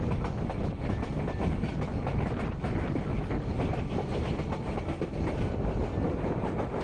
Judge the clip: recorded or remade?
recorded